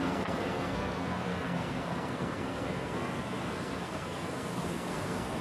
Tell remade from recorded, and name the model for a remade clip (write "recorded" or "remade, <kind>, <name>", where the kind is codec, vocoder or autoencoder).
remade, codec, SNAC